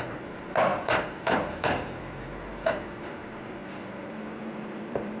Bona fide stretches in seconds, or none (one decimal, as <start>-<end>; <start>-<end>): 0.7-3.0; 3.6-4.4